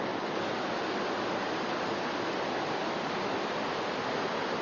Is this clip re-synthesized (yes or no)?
no